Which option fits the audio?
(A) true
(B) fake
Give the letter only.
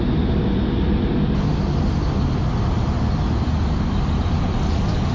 A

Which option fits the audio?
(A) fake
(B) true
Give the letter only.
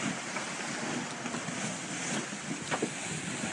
A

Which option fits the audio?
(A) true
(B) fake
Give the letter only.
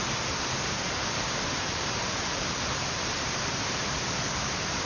B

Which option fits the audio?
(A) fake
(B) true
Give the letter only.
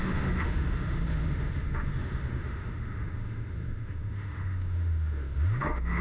A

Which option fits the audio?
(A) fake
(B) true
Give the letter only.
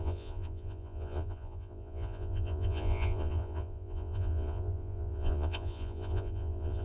A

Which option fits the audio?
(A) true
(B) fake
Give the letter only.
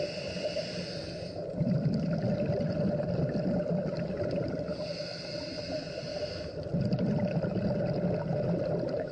A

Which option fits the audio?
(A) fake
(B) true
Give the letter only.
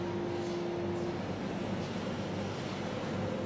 B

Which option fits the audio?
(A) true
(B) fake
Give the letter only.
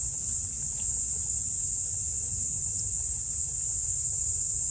A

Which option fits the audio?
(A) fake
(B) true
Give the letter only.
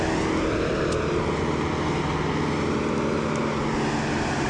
B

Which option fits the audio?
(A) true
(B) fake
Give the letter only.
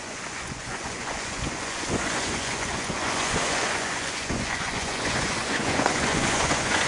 B